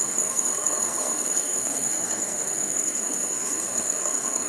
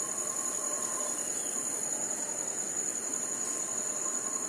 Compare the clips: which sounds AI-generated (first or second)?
first